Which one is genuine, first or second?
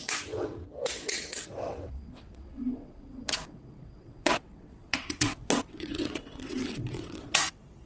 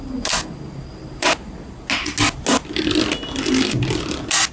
second